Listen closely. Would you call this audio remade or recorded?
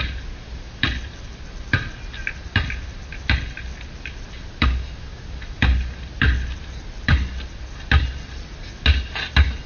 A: recorded